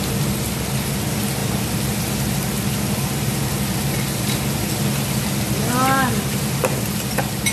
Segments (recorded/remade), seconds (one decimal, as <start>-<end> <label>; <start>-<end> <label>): 0.0-5.8 recorded; 5.8-6.7 remade; 6.7-7.5 recorded